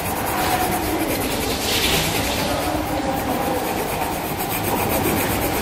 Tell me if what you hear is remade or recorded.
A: recorded